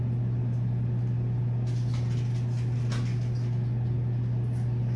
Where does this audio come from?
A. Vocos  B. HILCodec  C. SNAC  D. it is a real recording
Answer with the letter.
D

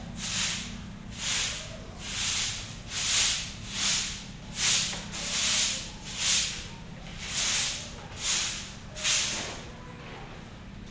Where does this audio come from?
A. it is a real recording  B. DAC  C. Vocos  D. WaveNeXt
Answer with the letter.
A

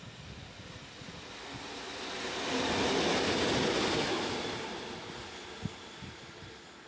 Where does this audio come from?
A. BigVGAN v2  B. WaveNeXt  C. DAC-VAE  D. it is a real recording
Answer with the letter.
A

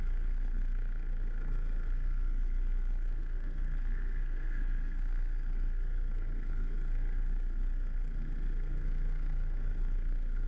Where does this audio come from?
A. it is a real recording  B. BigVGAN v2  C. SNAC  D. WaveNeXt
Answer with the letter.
C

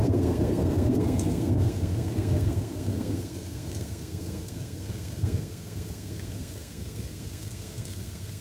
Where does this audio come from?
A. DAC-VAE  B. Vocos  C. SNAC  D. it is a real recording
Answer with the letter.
C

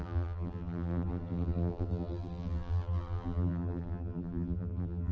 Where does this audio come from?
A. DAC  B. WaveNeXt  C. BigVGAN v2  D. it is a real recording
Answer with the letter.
C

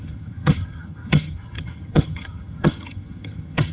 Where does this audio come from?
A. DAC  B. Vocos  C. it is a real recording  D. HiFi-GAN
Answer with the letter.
D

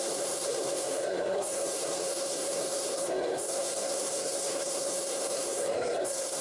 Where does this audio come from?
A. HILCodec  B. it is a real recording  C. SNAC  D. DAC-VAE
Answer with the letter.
C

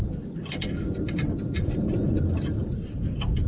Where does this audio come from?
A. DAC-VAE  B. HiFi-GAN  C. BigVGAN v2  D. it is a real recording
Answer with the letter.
D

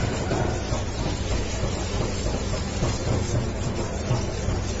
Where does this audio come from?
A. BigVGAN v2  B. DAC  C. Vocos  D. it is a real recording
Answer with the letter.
D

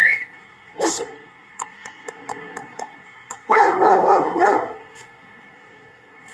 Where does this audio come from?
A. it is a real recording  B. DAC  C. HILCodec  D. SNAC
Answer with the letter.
D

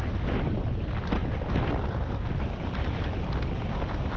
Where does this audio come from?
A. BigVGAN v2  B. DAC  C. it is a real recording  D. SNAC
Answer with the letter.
C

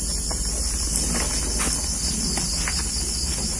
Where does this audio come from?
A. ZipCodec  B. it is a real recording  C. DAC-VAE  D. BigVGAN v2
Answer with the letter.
B